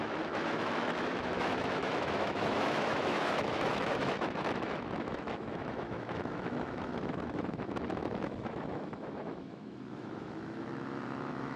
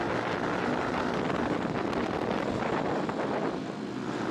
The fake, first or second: first